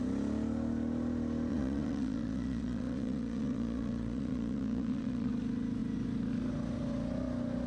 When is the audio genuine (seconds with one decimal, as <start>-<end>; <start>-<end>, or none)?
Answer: 0.0-1.5; 5.3-7.7